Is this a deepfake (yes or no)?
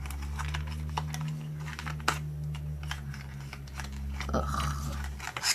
no